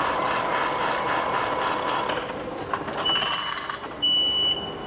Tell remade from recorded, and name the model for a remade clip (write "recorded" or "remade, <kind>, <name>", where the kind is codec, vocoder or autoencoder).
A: recorded